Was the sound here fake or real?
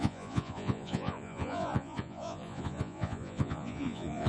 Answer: fake